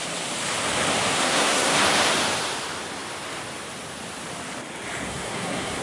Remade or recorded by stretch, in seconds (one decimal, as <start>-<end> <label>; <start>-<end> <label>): 0.0-1.1 recorded; 1.1-1.8 remade; 1.8-5.1 recorded; 5.1-5.8 remade